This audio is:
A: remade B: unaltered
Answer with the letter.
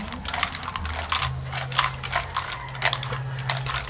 B